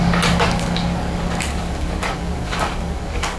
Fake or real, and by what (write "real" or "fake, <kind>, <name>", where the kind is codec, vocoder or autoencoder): fake, codec, DAC